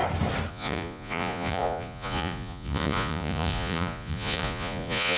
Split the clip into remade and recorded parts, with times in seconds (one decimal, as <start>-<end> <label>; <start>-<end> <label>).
0.0-0.5 recorded; 0.5-5.2 remade